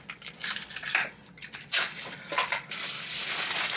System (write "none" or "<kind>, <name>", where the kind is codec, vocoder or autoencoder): none